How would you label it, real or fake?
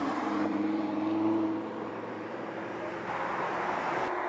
fake